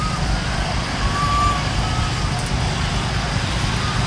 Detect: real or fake real